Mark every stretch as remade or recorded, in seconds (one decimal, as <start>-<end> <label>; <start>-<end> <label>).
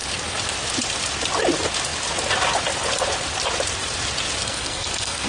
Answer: 0.0-4.4 recorded; 4.4-5.3 remade